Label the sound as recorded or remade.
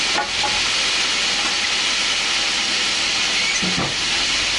recorded